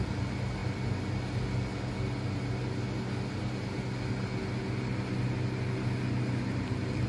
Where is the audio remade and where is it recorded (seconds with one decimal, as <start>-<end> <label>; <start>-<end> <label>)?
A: 0.0-7.1 recorded